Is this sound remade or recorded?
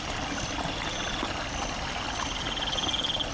recorded